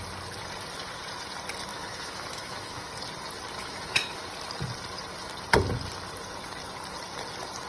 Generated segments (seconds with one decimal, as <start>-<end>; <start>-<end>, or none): 1.7-2.9; 3.6-4.2